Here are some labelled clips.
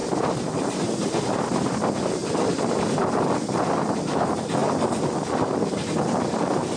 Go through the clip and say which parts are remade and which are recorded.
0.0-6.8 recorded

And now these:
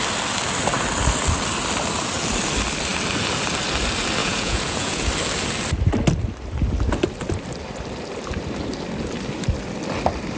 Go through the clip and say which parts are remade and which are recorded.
0.0-4.2 recorded; 4.2-5.1 remade; 5.1-10.4 recorded

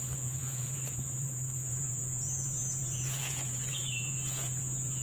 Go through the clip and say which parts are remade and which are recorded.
0.0-5.0 remade

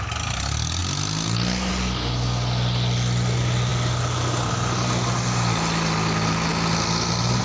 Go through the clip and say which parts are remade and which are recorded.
0.0-7.4 recorded

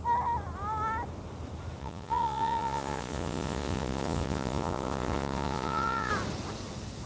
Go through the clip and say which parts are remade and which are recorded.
0.0-1.8 recorded; 1.8-6.1 remade; 6.1-7.1 recorded